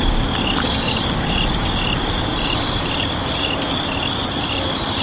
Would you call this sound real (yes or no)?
no